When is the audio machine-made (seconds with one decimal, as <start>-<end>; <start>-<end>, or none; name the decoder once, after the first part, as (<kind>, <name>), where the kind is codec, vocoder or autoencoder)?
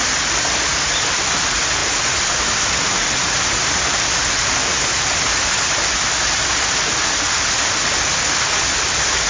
none